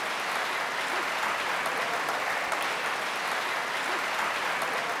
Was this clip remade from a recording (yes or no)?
no